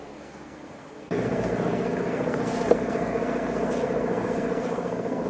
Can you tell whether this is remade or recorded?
remade